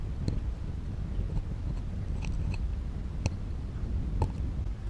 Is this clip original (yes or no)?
yes